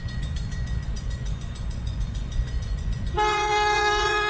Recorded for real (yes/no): no